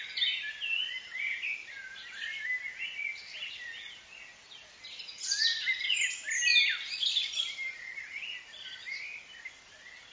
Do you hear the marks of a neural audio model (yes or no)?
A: no